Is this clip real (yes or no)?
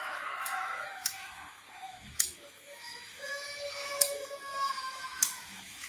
no